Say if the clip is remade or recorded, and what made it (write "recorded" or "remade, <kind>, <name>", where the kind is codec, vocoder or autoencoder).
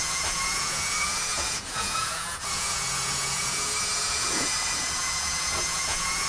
remade, vocoder, Vocos